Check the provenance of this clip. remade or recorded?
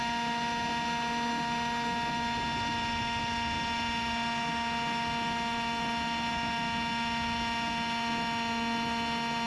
recorded